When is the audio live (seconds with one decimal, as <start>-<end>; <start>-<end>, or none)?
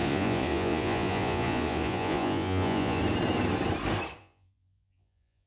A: 3.0-4.2